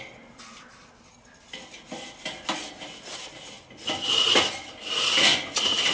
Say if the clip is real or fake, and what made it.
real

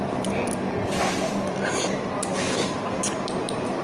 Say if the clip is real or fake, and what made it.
real